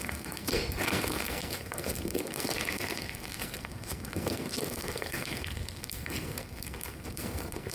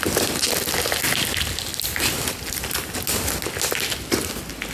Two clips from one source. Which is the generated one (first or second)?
first